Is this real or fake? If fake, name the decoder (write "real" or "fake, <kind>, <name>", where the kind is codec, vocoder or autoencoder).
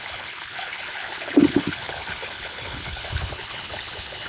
fake, codec, HILCodec